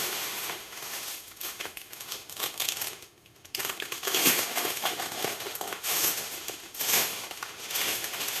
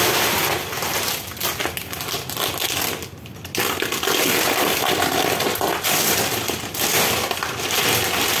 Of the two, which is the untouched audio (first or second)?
second